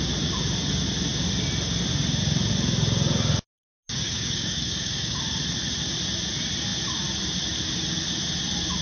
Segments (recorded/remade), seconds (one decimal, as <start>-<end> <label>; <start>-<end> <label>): 0.0-3.9 recorded; 3.9-5.2 remade; 5.2-8.8 recorded

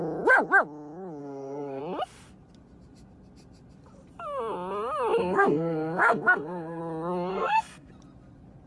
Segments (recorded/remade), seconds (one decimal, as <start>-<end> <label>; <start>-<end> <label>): 0.0-1.2 recorded; 1.2-1.8 remade; 1.8-5.2 recorded; 5.2-6.8 remade; 6.8-7.3 recorded; 7.3-7.9 remade; 7.9-8.7 recorded

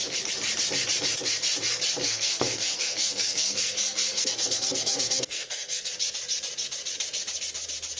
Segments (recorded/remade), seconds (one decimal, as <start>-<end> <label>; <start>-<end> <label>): 0.0-2.0 recorded; 2.0-5.9 remade; 5.9-8.0 recorded

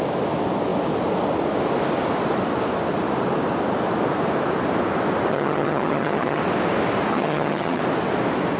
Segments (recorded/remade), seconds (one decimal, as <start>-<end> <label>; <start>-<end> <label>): 0.0-5.3 recorded; 5.3-6.4 remade; 6.4-7.1 recorded; 7.1-7.8 remade; 7.8-8.6 recorded

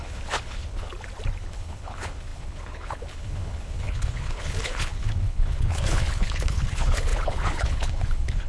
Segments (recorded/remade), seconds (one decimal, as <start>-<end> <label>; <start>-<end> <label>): 0.0-0.9 remade; 0.9-1.4 recorded; 1.4-8.5 remade

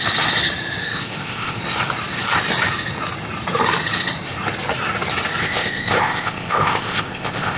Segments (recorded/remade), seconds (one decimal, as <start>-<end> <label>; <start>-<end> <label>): 0.0-0.8 recorded; 0.8-1.6 remade; 1.6-5.4 recorded; 5.4-7.6 remade

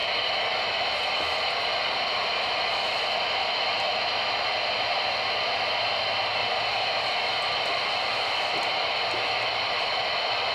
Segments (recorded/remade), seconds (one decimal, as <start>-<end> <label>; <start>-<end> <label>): 0.0-10.5 recorded